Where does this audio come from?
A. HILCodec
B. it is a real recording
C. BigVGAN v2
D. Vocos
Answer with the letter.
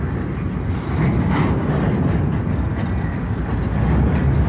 B